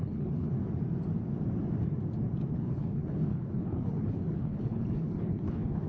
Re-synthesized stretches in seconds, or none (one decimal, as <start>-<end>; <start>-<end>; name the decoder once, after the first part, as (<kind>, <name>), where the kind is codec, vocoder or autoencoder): 0.0-0.6 (codec, HILCodec); 2.5-5.9